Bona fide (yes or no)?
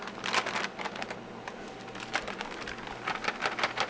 yes